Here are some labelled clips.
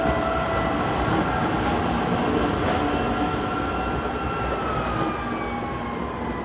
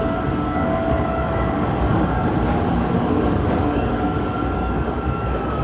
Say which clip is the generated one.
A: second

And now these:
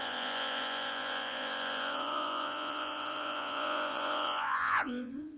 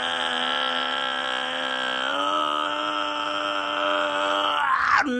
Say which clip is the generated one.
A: first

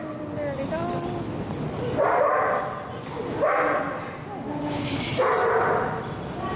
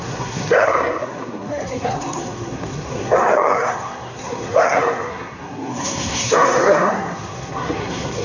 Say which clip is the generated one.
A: second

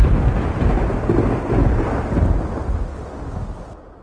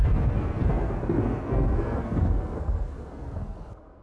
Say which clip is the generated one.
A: second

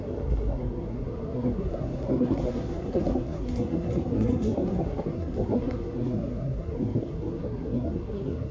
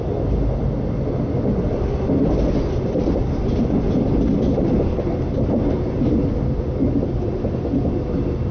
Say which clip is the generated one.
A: first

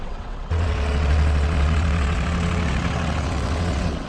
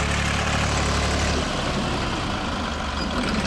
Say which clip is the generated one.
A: first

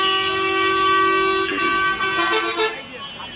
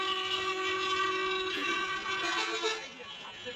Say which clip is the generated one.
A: second